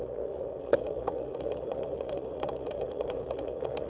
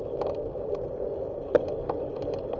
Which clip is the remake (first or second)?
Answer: first